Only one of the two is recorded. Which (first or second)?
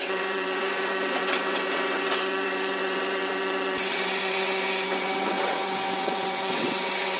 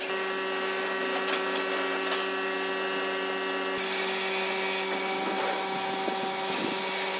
second